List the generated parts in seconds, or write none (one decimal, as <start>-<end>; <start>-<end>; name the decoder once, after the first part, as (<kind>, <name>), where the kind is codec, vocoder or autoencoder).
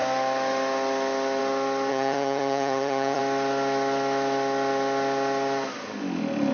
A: 1.9-3.2 (vocoder, HiFi-GAN)